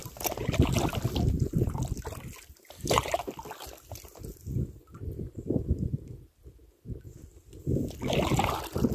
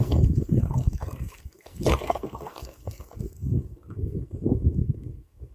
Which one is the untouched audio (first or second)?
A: first